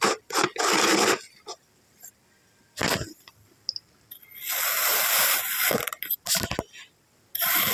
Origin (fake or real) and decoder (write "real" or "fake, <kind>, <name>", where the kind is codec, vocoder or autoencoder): real